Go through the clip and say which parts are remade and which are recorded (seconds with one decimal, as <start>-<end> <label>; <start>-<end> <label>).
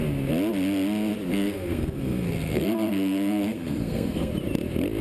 0.0-1.3 recorded; 1.3-4.3 remade; 4.3-5.0 recorded